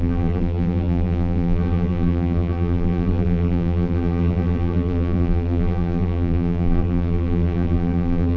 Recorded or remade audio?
remade